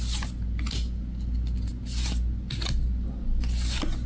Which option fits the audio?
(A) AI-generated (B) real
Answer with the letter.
B